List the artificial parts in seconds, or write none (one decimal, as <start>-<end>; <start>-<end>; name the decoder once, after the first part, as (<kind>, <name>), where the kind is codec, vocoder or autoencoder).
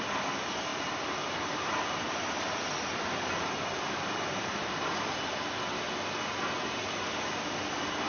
0.7-4.8 (vocoder, BigVGAN v2)